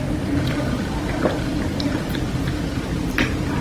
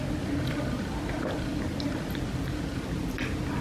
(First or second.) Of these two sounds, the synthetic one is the first